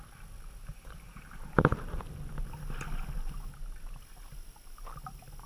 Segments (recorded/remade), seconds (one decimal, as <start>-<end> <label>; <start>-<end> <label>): 0.0-0.6 recorded; 0.6-2.0 remade; 2.0-5.5 recorded